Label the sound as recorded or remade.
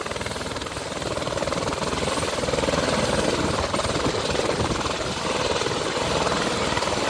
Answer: recorded